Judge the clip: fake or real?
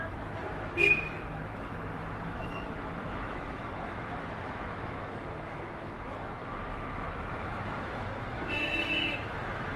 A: fake